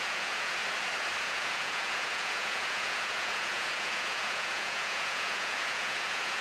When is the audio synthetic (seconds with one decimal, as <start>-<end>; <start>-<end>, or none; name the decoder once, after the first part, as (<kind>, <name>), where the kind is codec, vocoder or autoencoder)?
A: 0.0-0.6 (vocoder, Vocos); 1.2-6.4